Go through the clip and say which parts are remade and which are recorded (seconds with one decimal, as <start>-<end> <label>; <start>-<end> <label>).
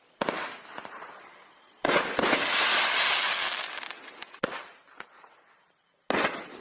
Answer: 0.0-6.6 recorded